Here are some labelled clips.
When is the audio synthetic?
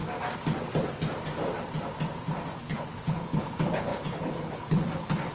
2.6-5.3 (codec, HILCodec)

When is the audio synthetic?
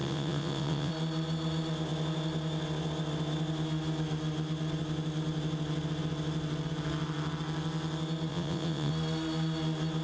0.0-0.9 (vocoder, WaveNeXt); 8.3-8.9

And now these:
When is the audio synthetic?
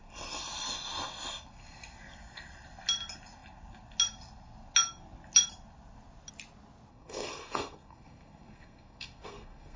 6.9-9.8 (codec, SNAC)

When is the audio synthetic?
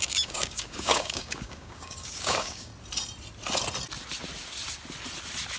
0.0-2.7 (codec, DAC)